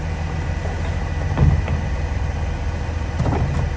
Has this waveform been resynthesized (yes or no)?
no